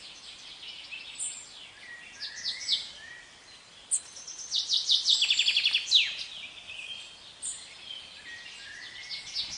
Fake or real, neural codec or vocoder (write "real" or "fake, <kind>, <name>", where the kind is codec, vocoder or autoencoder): real